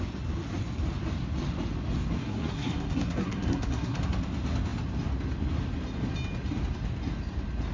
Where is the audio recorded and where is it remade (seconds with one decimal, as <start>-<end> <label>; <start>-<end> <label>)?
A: 0.0-2.2 recorded; 2.2-4.0 remade; 4.0-7.7 recorded